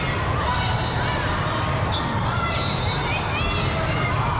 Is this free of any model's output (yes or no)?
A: yes